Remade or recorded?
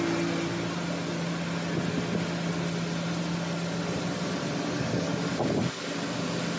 recorded